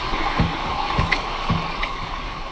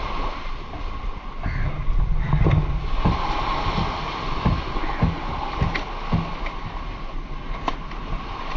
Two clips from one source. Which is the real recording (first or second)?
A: second